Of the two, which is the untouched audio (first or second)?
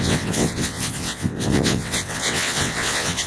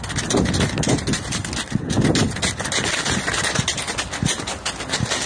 second